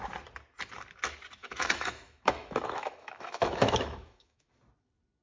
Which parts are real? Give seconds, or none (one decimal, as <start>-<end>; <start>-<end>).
0.0-1.4; 4.5-5.2